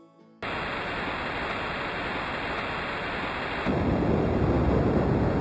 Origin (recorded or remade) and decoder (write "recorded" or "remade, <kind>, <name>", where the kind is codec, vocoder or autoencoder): recorded